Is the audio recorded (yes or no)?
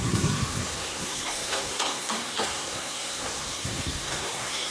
no